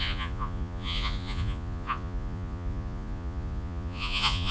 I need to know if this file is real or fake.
fake